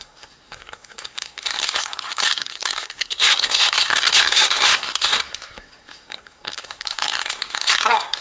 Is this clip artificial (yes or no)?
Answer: yes